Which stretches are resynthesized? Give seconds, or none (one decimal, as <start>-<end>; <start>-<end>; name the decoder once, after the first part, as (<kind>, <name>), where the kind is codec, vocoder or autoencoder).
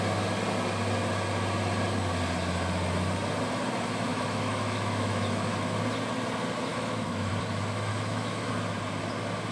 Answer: 4.1-5.5 (autoencoder, DAC-VAE); 6.7-7.3; 7.9-8.5